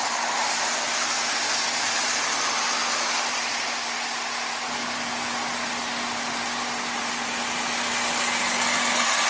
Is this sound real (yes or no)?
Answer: yes